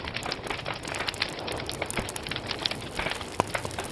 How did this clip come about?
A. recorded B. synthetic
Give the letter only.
A